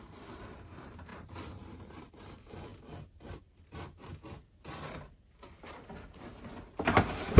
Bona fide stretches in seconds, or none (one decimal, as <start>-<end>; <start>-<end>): 2.7-3.4; 4.1-5.4